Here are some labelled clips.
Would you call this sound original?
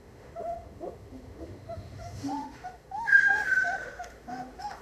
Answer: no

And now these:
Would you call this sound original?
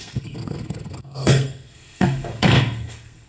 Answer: no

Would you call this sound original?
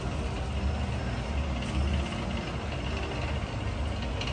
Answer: yes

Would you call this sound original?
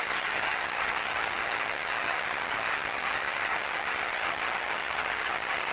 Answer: no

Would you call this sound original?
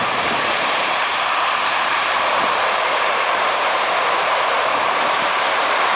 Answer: no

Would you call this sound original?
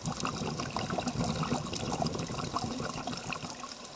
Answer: yes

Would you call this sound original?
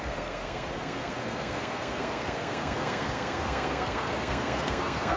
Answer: no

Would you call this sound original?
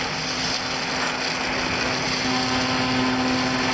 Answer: yes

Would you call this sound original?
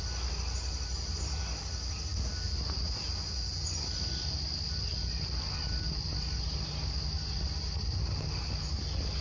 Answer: yes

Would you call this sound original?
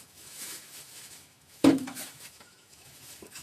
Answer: no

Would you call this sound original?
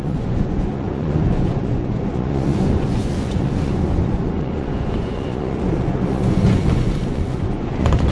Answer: no